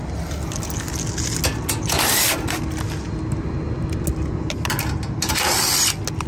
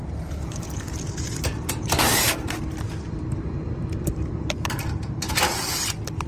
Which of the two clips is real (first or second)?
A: first